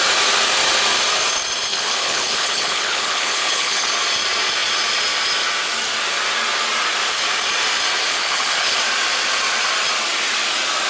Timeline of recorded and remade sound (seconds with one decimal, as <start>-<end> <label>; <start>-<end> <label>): 0.0-1.7 recorded; 1.7-3.9 remade; 3.9-8.1 recorded; 8.1-8.8 remade; 8.8-10.9 recorded